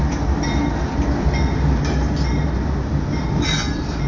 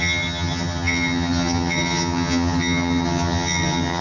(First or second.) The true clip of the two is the first